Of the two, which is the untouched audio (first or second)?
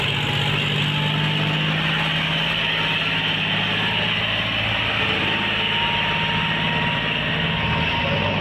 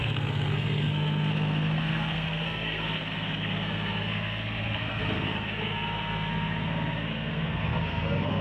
first